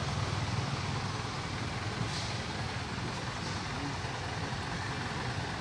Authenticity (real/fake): real